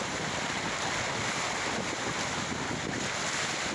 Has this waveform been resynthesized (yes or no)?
no